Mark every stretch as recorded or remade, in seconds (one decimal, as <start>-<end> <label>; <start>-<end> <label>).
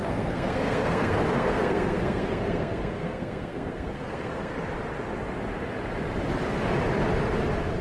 0.0-4.5 remade; 4.5-7.8 recorded